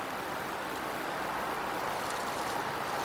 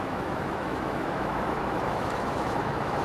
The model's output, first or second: second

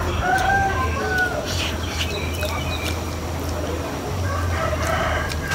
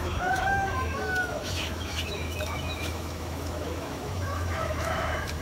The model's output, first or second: second